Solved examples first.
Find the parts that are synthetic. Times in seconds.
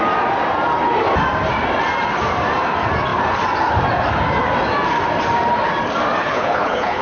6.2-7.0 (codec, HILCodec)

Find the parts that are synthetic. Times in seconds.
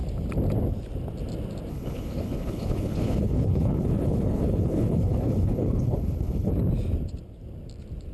1.7-6.5 (codec, HILCodec)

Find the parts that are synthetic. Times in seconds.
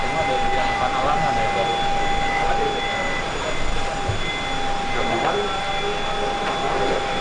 none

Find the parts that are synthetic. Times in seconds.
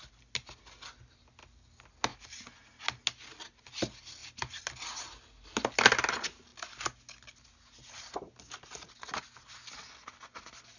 none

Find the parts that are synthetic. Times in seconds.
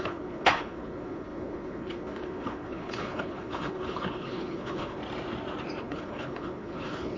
0.0-5.0 (codec, HILCodec); 5.8-7.2